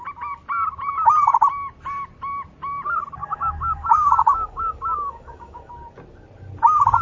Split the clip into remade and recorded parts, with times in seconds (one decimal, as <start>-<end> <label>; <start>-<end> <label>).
0.0-3.2 recorded; 3.2-5.7 remade; 5.7-7.0 recorded